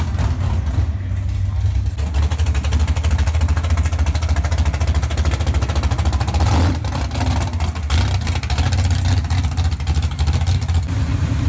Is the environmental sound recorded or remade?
recorded